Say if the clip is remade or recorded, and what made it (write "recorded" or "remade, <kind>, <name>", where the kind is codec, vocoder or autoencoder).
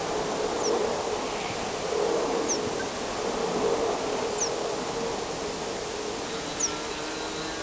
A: recorded